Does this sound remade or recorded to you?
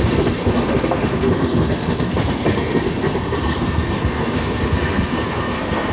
remade